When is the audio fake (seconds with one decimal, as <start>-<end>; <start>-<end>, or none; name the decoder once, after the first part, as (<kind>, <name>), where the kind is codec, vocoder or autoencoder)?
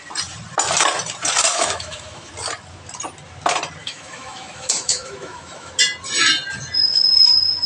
1.5-2.3 (autoencoder, DAC-VAE); 3.8-5.7